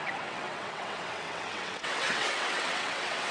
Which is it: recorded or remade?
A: remade